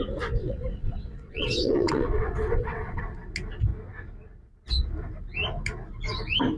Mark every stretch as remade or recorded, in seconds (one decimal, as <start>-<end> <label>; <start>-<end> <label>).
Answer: 0.0-0.4 recorded; 0.4-3.0 remade; 3.0-6.6 recorded